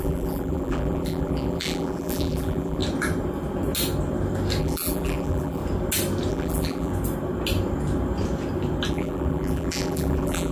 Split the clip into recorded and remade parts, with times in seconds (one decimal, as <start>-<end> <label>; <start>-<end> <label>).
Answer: 0.0-2.8 remade; 2.8-4.6 recorded; 4.6-5.6 remade; 5.6-6.3 recorded; 6.3-6.9 remade; 6.9-8.9 recorded; 8.9-10.5 remade